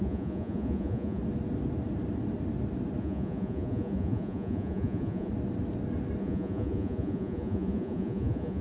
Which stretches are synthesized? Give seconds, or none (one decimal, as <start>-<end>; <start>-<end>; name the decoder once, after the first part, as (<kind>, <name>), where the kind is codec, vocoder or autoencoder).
0.0-1.2 (vocoder, Vocos); 3.0-5.3; 6.2-8.6